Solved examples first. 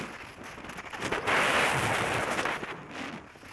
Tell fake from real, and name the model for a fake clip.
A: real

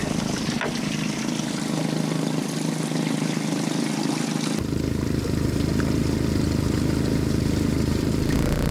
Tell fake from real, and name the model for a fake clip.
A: real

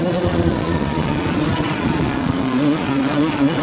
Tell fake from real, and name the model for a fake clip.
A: fake, vocoder, Vocos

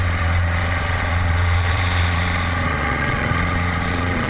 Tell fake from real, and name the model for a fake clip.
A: fake, vocoder, Vocos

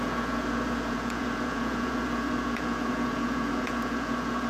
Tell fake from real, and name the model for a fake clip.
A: fake, vocoder, Vocos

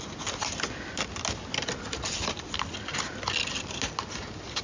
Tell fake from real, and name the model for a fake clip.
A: real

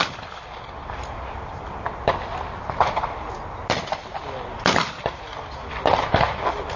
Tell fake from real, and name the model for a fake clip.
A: real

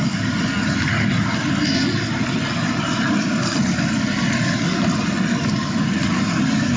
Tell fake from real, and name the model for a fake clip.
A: real